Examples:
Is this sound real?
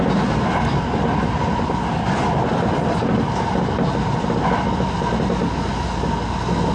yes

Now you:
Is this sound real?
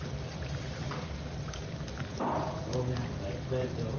yes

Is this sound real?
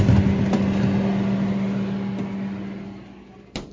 yes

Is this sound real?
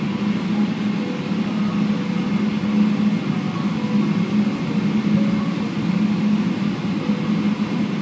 yes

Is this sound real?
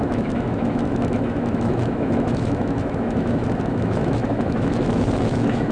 no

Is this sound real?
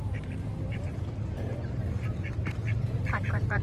no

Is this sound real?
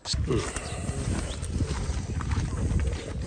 yes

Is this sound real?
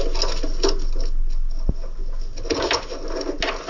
yes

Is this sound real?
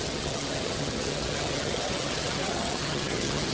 no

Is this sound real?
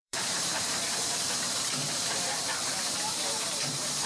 no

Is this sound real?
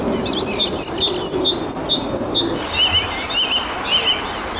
yes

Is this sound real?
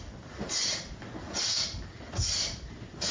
yes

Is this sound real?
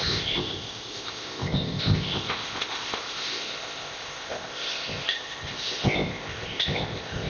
no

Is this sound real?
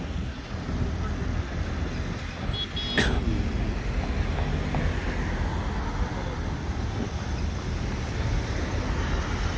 yes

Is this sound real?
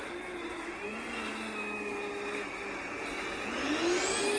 yes